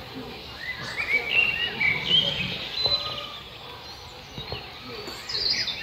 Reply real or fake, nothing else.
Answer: real